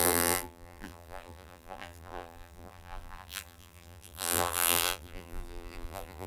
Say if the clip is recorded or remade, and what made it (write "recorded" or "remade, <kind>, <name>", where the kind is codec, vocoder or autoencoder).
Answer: remade, vocoder, BigVGAN v2